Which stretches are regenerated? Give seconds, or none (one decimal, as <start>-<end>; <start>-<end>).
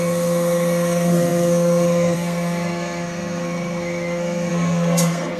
0.0-5.4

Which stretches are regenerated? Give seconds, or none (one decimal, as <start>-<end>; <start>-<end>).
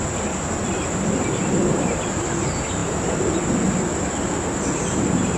none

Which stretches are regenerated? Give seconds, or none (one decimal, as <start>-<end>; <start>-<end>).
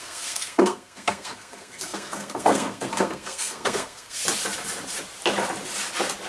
0.0-4.2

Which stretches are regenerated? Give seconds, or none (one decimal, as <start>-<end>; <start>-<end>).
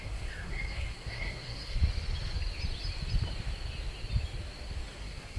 0.0-1.8; 5.0-5.4